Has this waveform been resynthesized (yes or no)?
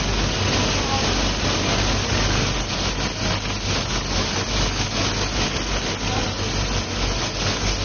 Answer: no